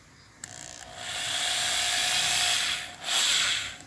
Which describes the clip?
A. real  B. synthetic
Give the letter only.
A